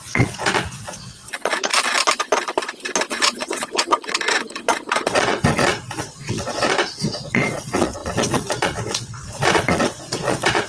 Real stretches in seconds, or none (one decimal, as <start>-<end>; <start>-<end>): 1.7-3.1